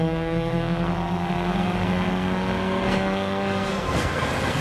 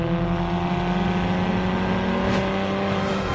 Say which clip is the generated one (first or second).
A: first